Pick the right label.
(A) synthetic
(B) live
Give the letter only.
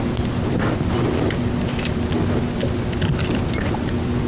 B